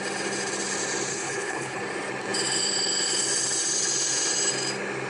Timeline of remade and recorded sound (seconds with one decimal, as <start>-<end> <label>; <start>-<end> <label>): 0.0-1.1 recorded; 1.1-1.8 remade; 1.8-5.1 recorded